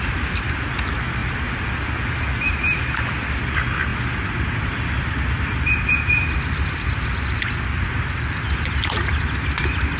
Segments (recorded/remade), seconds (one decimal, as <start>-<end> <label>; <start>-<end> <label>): 0.0-10.0 recorded